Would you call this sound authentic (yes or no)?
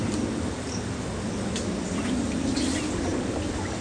yes